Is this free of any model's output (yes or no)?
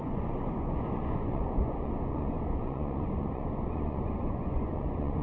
no